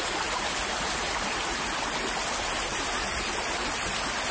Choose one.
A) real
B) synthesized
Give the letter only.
A